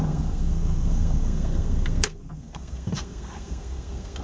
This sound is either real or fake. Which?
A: fake